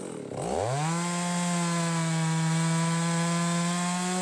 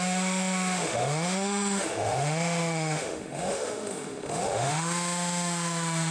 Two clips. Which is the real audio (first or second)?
first